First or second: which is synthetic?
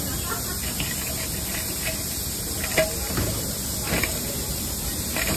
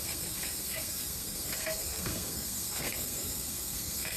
second